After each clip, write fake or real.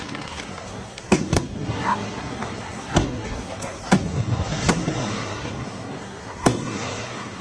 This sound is fake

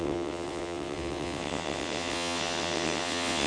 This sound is fake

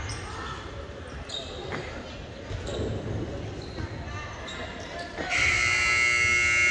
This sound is real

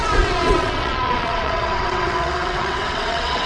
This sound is fake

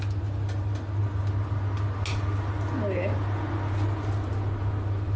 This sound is real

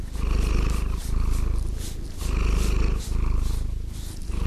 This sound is real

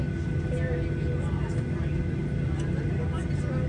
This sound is real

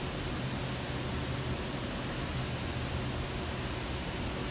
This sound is real